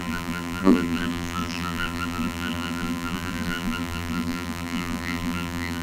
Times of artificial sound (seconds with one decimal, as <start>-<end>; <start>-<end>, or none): 0.0-5.8